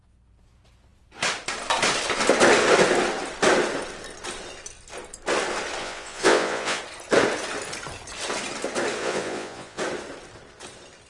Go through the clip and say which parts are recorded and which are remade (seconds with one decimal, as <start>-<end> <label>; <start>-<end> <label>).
0.0-5.8 recorded; 5.8-6.8 remade; 6.8-9.0 recorded; 9.0-9.8 remade; 9.8-11.1 recorded